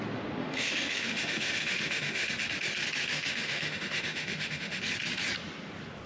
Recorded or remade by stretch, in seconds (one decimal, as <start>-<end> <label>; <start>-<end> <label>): 0.0-0.4 recorded; 0.4-2.3 remade; 2.3-3.0 recorded; 3.0-4.8 remade; 4.8-6.1 recorded